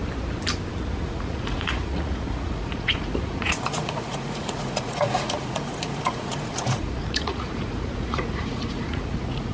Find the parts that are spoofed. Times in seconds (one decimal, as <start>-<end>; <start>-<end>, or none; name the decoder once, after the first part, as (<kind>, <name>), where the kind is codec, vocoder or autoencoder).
0.9-9.5 (vocoder, Vocos)